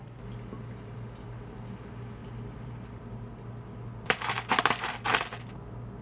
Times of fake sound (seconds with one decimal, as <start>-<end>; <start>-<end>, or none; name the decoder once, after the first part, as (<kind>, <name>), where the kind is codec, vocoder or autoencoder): 2.2-3.4 (vocoder, BigVGAN v2)